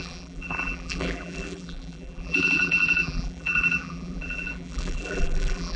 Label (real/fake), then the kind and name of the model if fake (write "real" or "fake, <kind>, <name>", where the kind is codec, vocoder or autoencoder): fake, vocoder, BigVGAN v2